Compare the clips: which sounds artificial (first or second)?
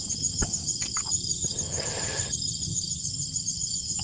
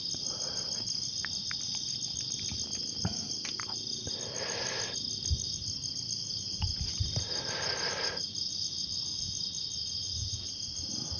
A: first